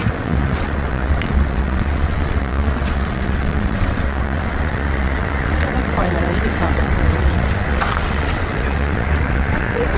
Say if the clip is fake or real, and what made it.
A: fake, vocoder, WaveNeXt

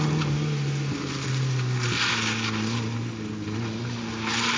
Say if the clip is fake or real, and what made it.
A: real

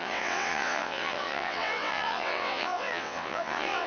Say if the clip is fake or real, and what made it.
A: fake, vocoder, WaveNeXt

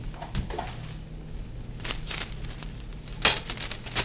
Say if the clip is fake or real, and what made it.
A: real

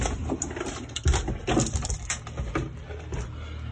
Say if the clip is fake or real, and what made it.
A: real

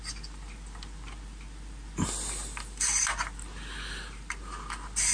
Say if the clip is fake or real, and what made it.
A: real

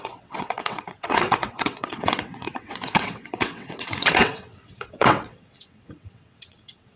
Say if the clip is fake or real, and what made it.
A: fake, vocoder, WaveNeXt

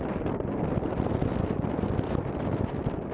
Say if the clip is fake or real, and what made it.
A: real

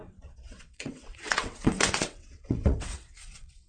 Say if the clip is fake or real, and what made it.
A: fake, vocoder, WaveNeXt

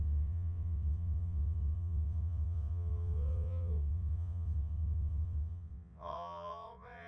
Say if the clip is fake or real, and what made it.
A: fake, vocoder, WaveNeXt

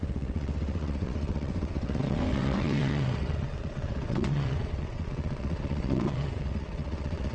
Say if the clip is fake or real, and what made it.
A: fake, vocoder, WaveNeXt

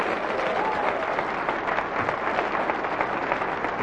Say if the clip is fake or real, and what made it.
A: real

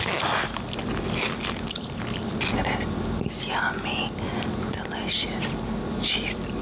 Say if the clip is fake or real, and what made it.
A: real